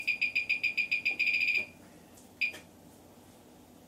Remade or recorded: recorded